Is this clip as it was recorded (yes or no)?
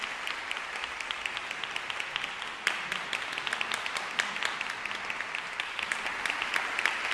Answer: yes